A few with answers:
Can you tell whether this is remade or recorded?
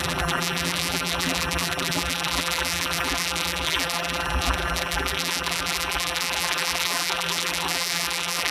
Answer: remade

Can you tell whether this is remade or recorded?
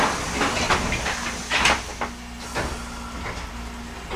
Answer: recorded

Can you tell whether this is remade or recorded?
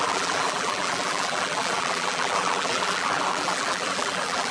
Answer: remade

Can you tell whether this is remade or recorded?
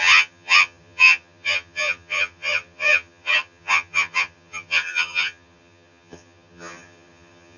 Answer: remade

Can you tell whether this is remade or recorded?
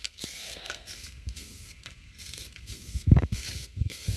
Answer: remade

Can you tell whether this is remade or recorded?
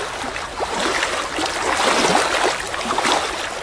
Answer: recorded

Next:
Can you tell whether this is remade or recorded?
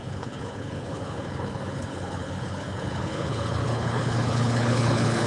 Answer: remade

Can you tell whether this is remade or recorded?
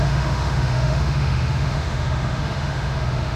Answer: remade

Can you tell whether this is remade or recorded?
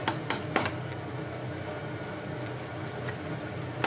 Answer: recorded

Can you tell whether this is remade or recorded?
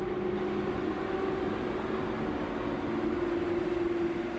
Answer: recorded